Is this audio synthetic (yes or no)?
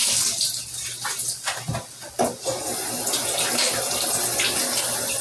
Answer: no